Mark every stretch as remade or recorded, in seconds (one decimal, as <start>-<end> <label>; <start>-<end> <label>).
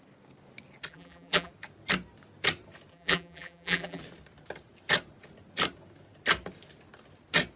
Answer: 0.0-0.9 recorded; 0.9-1.5 remade; 1.5-2.9 recorded; 2.9-4.0 remade; 4.0-7.6 recorded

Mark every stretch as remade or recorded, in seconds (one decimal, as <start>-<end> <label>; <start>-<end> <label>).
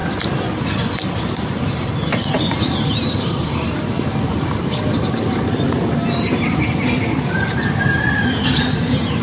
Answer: 0.0-1.1 recorded; 1.1-9.2 remade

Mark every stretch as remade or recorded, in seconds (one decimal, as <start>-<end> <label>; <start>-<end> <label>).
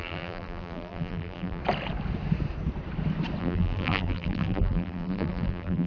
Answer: 0.0-1.6 remade; 1.6-3.4 recorded; 3.4-5.9 remade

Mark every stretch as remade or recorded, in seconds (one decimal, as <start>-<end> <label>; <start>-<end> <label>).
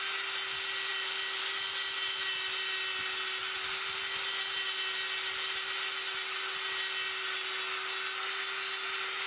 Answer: 0.0-9.3 recorded